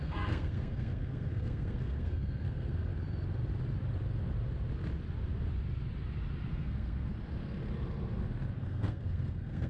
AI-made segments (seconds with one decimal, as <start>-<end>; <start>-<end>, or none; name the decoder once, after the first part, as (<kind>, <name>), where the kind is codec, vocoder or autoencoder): 0.0-2.9 (codec, SNAC); 6.5-7.1; 8.6-9.7